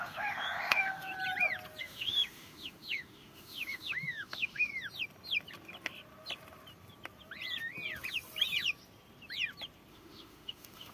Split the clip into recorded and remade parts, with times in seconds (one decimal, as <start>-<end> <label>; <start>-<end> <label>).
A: 0.0-1.1 remade; 1.1-1.8 recorded; 1.8-4.7 remade; 4.7-9.9 recorded; 9.9-10.9 remade

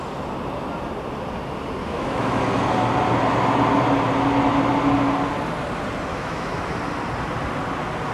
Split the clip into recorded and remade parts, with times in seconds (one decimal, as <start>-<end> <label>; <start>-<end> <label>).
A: 0.0-1.8 recorded; 1.8-2.4 remade; 2.4-6.1 recorded; 6.1-6.7 remade; 6.7-8.1 recorded

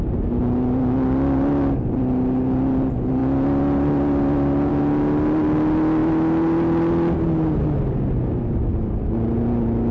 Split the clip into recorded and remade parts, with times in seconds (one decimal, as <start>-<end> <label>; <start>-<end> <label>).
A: 0.0-9.9 recorded

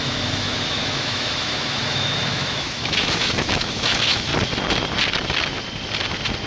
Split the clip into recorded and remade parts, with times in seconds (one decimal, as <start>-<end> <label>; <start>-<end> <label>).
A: 0.0-4.3 remade; 4.3-6.5 recorded

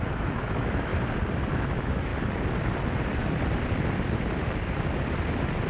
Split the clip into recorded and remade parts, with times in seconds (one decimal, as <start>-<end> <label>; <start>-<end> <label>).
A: 0.0-0.9 remade; 0.9-1.5 recorded; 1.5-2.1 remade; 2.1-5.7 recorded

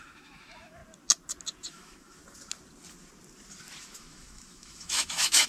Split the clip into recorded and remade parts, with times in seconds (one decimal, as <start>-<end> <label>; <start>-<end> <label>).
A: 0.0-0.8 remade; 0.8-1.7 recorded; 1.7-2.2 remade; 2.2-3.8 recorded; 3.8-5.5 remade

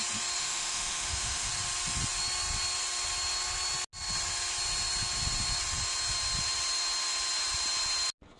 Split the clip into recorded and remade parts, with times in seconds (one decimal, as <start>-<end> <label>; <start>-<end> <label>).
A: 0.0-0.4 recorded; 0.4-1.5 remade; 1.5-8.4 recorded

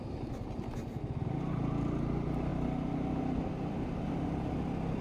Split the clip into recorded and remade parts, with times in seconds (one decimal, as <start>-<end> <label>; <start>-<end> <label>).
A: 0.0-5.0 recorded